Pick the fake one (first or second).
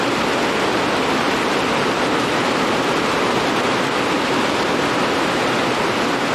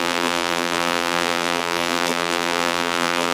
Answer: second